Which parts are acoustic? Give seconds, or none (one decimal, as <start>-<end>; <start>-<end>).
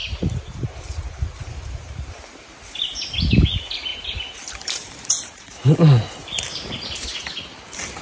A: 2.1-3.9; 5.4-6.2; 7.3-8.0